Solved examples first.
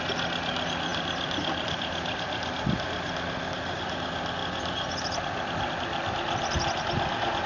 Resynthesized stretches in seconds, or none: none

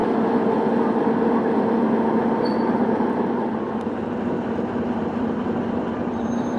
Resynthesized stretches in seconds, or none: 2.2-6.6 (vocoder, BigVGAN v2)

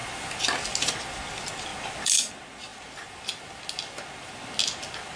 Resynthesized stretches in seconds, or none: 1.7-2.3 (vocoder, BigVGAN v2)

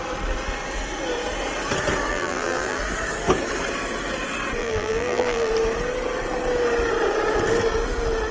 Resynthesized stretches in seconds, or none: 2.1-2.8 (vocoder, BigVGAN v2); 4.6-5.5

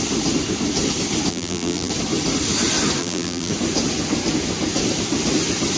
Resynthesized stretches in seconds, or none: 1.3-1.9 (vocoder, BigVGAN v2); 3.0-3.5

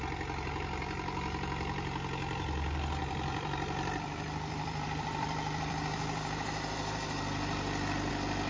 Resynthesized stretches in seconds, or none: 3.0-8.1 (vocoder, BigVGAN v2)

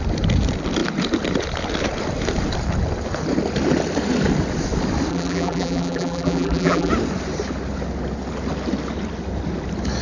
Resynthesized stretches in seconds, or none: 5.1-6.9 (vocoder, BigVGAN v2)

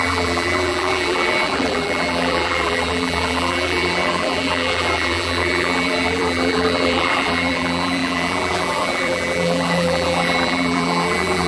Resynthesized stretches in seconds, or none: 0.0-11.5 (vocoder, BigVGAN v2)